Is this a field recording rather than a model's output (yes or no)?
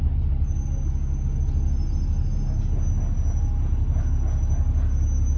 yes